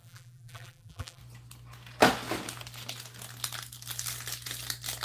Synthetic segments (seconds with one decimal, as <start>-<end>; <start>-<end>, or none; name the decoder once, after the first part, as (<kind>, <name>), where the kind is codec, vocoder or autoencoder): 0.0-1.2 (vocoder, BigVGAN v2)